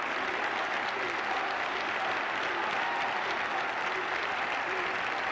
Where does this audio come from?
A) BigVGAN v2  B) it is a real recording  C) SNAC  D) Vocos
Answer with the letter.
B